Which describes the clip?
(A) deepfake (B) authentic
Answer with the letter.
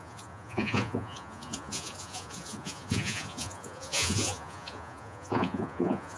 A